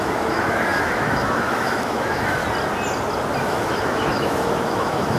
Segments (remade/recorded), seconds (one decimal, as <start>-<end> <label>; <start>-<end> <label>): 0.0-2.4 remade; 2.4-3.4 recorded; 3.4-5.2 remade